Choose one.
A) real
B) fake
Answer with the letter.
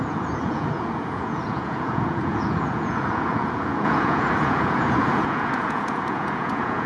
B